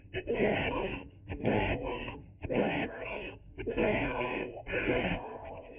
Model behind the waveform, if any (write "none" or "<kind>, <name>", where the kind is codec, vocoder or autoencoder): codec, SNAC